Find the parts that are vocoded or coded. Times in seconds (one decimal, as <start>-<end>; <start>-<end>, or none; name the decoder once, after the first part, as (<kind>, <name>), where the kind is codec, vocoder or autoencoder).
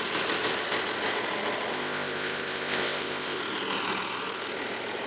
1.7-3.4 (codec, ZipCodec)